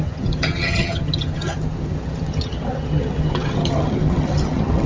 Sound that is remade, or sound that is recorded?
remade